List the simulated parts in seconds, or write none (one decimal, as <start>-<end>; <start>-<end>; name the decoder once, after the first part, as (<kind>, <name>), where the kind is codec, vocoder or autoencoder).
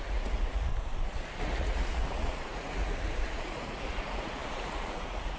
0.0-0.7 (vocoder, Vocos); 1.4-5.4